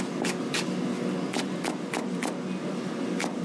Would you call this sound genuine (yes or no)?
yes